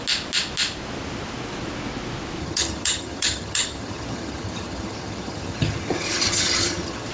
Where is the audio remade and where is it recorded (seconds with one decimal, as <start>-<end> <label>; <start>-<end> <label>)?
0.0-2.4 recorded; 2.4-7.1 remade